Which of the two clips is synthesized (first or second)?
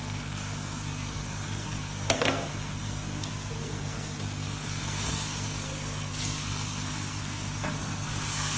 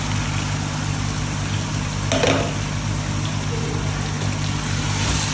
first